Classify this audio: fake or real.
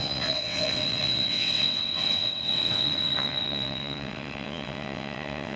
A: fake